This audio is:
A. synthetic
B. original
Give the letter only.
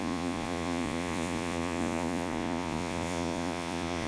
A